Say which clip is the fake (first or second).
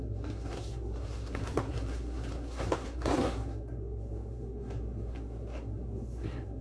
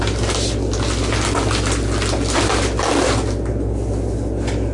first